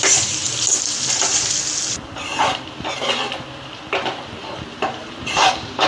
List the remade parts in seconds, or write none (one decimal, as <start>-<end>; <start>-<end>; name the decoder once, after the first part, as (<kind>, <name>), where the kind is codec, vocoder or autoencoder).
0.0-0.4 (vocoder, BigVGAN v2); 1.9-2.3; 4.6-5.9